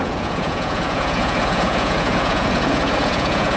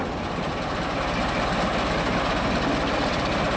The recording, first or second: second